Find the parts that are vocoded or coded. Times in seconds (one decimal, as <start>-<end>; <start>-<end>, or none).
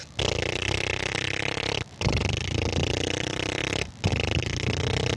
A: none